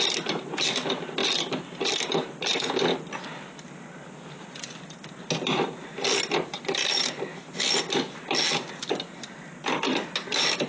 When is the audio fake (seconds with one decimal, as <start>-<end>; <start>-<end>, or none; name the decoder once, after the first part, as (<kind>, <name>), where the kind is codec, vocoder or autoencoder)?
none